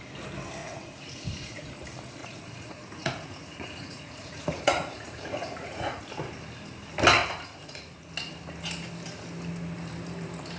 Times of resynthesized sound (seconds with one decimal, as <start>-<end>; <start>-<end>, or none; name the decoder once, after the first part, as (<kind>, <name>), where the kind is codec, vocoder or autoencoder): 0.6-1.7 (vocoder, Vocos); 2.2-6.0; 7.2-8.1

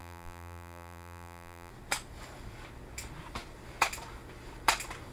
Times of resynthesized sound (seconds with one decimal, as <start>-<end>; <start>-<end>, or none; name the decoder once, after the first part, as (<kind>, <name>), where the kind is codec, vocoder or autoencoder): 0.0-1.7 (vocoder, BigVGAN v2)

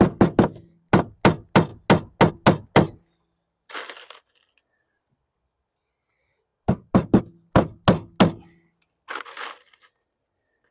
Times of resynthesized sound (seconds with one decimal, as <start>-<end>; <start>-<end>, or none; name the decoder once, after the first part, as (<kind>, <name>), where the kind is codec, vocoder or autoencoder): none

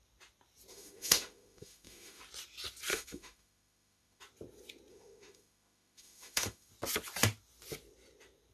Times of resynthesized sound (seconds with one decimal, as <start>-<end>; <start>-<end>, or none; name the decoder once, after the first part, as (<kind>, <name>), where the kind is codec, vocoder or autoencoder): 0.7-2.2 (autoencoder, DAC-VAE); 2.9-4.2; 4.9-6.7

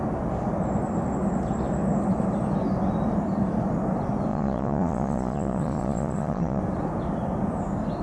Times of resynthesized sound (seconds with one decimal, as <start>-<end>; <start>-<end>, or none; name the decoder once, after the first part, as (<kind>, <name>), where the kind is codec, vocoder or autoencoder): 4.3-6.6 (vocoder, Vocos)

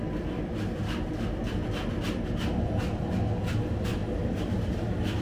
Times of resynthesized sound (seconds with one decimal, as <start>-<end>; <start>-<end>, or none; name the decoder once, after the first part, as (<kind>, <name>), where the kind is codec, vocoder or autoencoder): none